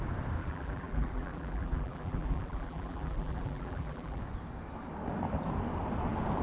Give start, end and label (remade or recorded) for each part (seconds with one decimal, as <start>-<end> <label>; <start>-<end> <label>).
0.0-0.4 recorded; 0.4-4.2 remade; 4.2-6.4 recorded